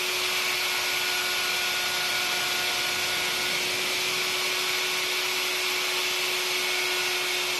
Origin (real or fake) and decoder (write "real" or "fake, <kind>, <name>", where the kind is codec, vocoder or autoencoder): real